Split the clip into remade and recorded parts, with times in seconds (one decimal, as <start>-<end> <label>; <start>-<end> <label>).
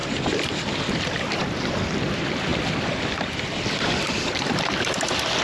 0.0-0.8 remade; 0.8-5.4 recorded